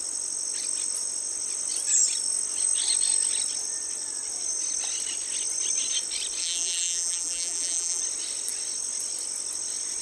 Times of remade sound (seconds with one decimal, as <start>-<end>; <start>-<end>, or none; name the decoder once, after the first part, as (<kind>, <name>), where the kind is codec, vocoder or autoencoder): 6.4-8.0 (vocoder, BigVGAN v2)